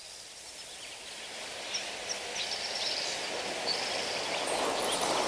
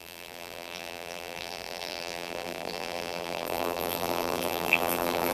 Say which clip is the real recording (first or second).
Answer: first